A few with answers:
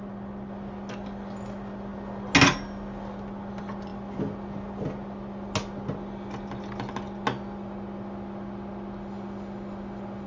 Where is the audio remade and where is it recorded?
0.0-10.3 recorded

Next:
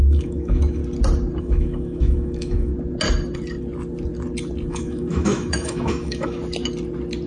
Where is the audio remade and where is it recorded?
0.0-0.8 remade; 0.8-1.4 recorded; 1.4-2.7 remade; 2.7-4.7 recorded; 4.7-6.4 remade; 6.4-7.3 recorded

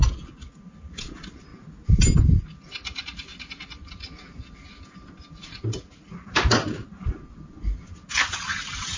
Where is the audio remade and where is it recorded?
0.0-9.0 recorded

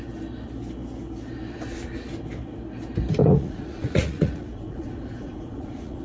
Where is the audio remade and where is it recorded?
0.0-3.2 recorded; 3.2-6.0 remade

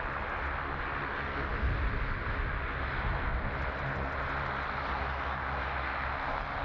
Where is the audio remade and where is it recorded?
0.0-6.6 recorded